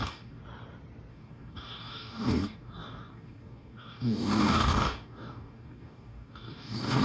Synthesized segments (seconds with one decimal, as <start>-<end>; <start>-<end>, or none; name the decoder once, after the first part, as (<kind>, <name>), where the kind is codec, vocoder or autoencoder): 0.0-0.4 (codec, DAC); 1.1-7.0